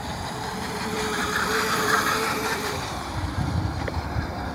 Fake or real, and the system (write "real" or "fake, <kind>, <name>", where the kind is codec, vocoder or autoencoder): fake, vocoder, BigVGAN v2